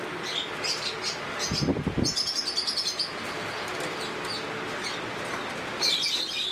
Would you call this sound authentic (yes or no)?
yes